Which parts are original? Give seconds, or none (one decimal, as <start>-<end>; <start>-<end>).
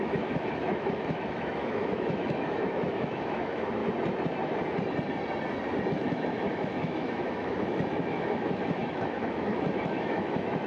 3.8-5.9